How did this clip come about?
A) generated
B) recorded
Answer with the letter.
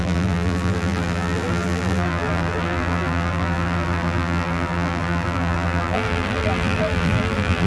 A